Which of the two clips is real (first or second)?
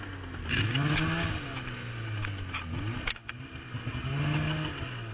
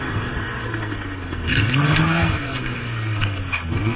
first